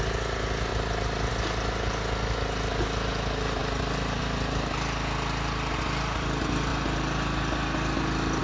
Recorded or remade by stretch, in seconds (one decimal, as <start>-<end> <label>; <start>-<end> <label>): 0.0-8.4 recorded

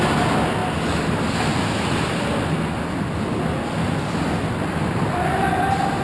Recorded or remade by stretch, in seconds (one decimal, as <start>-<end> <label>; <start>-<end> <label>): 0.0-6.0 recorded

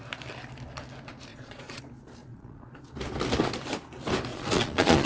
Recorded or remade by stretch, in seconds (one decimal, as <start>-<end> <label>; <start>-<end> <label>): 0.0-1.3 recorded; 1.3-1.8 remade; 1.8-2.2 recorded; 2.2-2.8 remade; 2.8-4.3 recorded; 4.3-5.1 remade

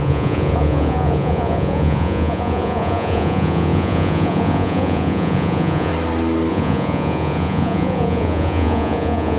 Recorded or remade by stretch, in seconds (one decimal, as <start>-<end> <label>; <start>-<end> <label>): 0.0-5.9 remade; 5.9-6.5 recorded; 6.5-9.4 remade

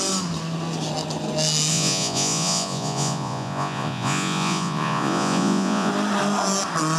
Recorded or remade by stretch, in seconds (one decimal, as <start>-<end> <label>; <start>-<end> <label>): 0.0-1.7 recorded; 1.7-5.9 remade; 5.9-7.0 recorded

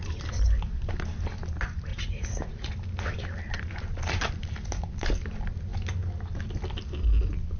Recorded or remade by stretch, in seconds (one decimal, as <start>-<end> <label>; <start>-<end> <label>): 0.0-1.9 recorded; 1.9-2.7 remade; 2.7-7.6 recorded

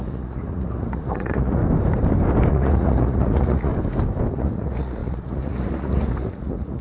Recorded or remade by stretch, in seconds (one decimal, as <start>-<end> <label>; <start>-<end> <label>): 0.0-1.6 remade; 1.6-2.5 recorded; 2.5-3.7 remade; 3.7-4.3 recorded; 4.3-6.8 remade

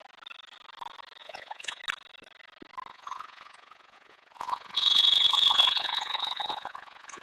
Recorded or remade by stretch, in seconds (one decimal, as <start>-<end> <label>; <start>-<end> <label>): 0.0-1.2 recorded; 1.2-1.8 remade; 1.8-2.9 recorded; 2.9-7.2 remade